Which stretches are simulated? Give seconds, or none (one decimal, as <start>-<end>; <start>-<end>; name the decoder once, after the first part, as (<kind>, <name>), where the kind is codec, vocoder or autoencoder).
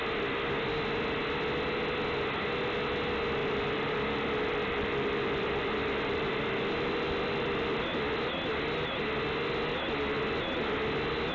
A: 3.4-7.8 (vocoder, BigVGAN v2)